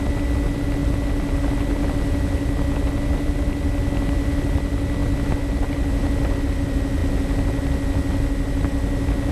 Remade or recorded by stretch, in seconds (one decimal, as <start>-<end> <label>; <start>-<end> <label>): 0.0-9.3 recorded